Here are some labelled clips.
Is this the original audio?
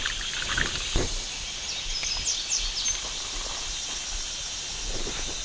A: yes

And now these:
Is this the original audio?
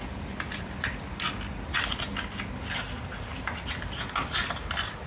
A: yes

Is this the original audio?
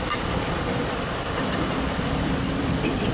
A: no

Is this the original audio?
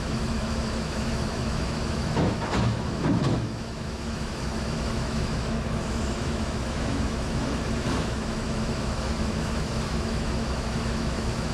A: no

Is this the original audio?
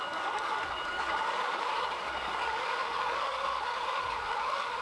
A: no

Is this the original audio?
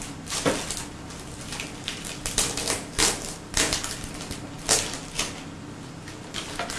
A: yes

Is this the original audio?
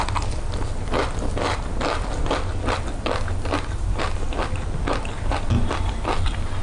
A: yes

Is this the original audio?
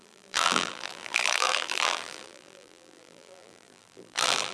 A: no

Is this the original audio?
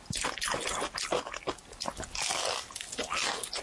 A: yes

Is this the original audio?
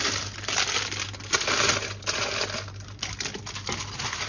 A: yes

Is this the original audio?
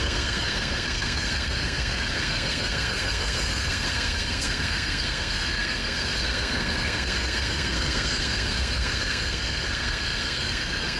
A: no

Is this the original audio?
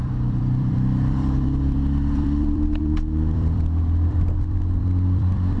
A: no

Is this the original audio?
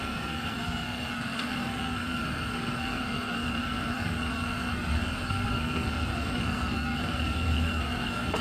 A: no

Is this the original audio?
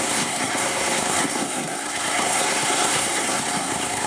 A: no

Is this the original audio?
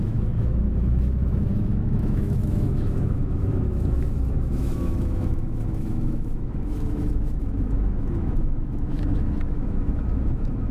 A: no